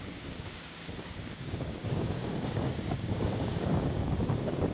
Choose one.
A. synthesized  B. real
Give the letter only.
A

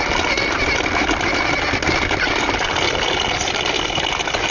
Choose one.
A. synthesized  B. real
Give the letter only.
B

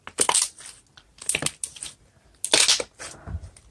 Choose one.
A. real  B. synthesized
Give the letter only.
A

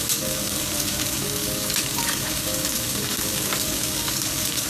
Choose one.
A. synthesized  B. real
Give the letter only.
A